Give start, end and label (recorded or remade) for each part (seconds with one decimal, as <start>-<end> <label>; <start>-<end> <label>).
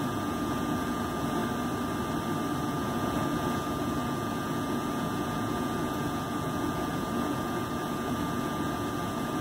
0.0-1.4 remade; 1.4-2.6 recorded; 2.6-9.4 remade